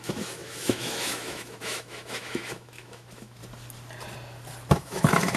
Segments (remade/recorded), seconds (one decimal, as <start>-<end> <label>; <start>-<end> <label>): 0.0-3.4 remade; 3.4-4.7 recorded; 4.7-5.4 remade